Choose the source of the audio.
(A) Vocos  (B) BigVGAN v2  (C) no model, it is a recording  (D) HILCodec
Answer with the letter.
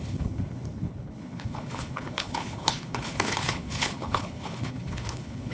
D